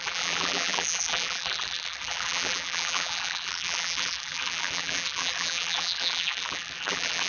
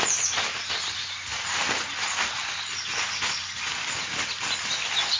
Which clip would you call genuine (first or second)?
second